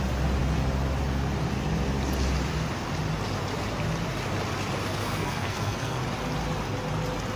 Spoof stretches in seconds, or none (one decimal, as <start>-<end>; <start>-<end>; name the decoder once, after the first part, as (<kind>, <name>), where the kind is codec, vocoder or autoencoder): 5.0-6.0 (codec, SNAC)